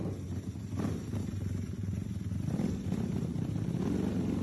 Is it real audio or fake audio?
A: real